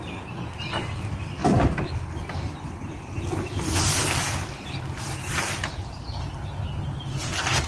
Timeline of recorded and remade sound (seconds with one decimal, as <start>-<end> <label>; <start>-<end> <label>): 0.0-7.7 recorded